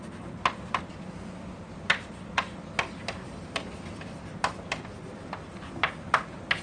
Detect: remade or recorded recorded